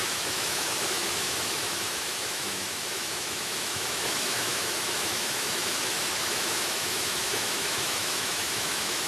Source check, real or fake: fake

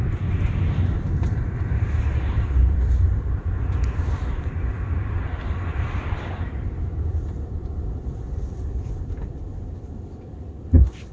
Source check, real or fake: fake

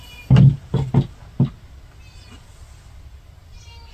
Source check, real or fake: real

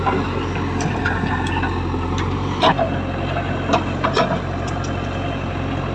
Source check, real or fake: real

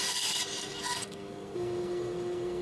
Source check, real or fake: fake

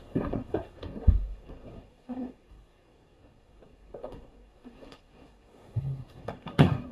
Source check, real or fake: fake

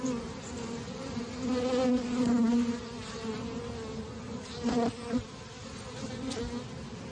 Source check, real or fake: real